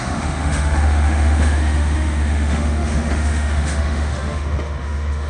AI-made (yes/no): yes